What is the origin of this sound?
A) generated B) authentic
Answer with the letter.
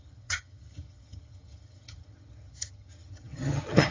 A